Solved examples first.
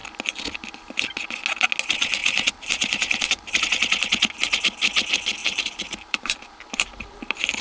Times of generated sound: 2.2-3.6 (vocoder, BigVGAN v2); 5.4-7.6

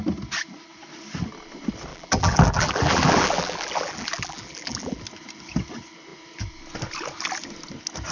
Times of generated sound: 1.9-5.0 (vocoder, BigVGAN v2)

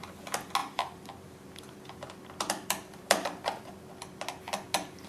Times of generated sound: 0.6-3.7 (vocoder, BigVGAN v2)

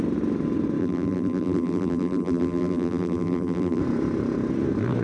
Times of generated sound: 0.8-3.8 (vocoder, BigVGAN v2)

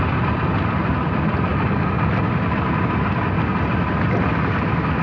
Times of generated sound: none

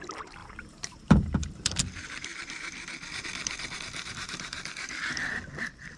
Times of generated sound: 0.4-1.8 (vocoder, BigVGAN v2)